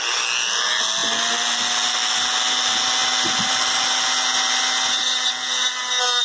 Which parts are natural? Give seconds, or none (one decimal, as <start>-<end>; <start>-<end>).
0.0-6.2